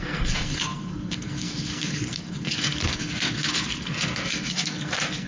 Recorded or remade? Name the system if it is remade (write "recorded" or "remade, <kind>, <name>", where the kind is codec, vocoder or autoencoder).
remade, codec, SNAC